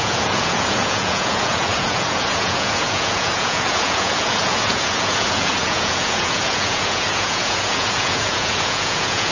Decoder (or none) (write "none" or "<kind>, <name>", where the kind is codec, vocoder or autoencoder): vocoder, Vocos